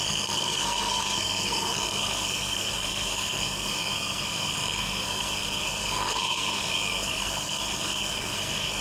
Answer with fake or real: fake